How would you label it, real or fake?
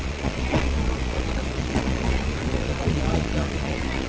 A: fake